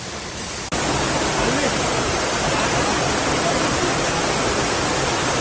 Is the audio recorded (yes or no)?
yes